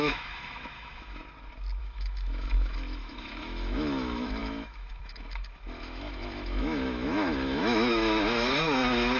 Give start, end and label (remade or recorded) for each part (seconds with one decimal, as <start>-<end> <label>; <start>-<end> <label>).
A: 0.0-1.2 remade; 1.2-1.8 recorded; 1.8-9.2 remade